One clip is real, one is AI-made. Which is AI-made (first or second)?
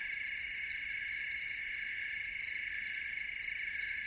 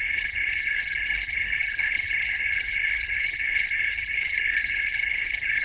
second